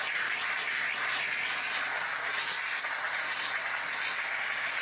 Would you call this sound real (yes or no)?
yes